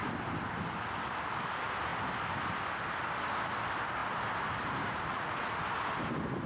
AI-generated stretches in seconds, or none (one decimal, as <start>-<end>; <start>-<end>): 5.1-5.6